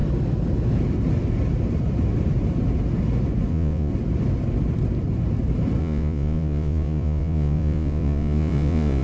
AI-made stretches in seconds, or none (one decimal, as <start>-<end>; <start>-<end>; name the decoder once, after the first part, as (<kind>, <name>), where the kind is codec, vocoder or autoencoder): 3.5-3.9 (vocoder, Vocos); 5.8-9.0